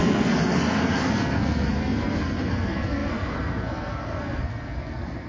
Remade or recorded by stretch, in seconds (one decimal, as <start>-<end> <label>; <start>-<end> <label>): 0.0-5.3 remade